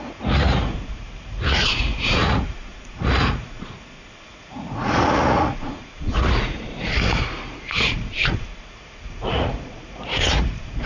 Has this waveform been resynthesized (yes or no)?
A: yes